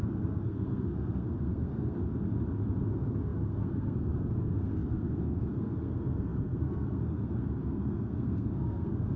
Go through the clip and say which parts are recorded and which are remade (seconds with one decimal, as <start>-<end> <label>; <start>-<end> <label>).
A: 0.0-2.0 remade; 2.0-2.9 recorded; 2.9-9.2 remade